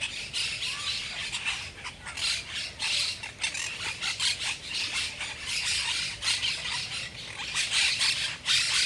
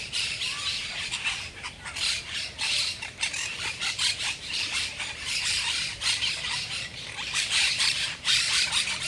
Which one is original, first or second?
first